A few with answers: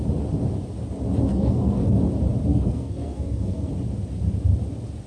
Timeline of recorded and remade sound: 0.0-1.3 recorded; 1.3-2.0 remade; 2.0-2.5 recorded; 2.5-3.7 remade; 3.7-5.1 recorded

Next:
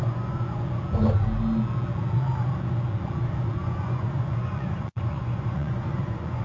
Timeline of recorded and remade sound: 0.0-0.6 remade; 0.6-3.6 recorded; 3.6-6.4 remade

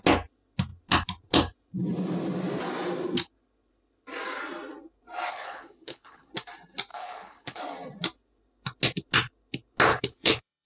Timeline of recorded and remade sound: 0.0-5.3 recorded; 5.3-6.3 remade; 6.3-6.9 recorded; 6.9-7.6 remade; 7.6-9.9 recorded; 9.9-10.7 remade

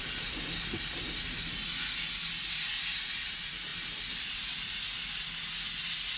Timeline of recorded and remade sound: 0.0-6.2 recorded

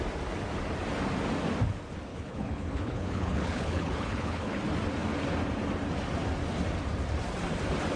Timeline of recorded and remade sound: 0.0-2.1 recorded; 2.1-4.6 remade; 4.6-8.0 recorded

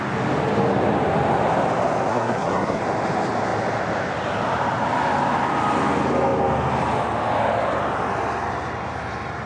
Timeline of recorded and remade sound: 0.0-2.1 recorded; 2.1-2.8 remade; 2.8-9.5 recorded

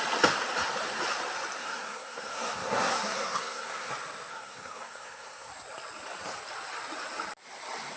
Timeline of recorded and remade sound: 0.0-1.6 recorded; 1.6-3.9 remade; 3.9-4.3 recorded; 4.3-5.5 remade; 5.5-8.0 recorded

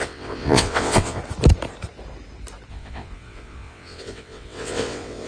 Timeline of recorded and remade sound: 0.0-1.2 remade; 1.2-2.7 recorded; 2.7-5.3 remade